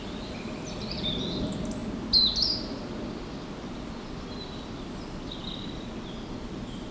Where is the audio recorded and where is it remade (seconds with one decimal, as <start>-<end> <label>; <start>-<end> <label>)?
0.0-6.9 recorded